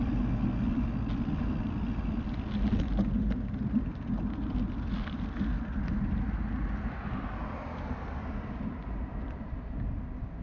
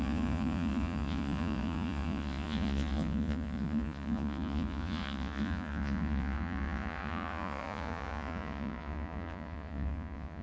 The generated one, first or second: second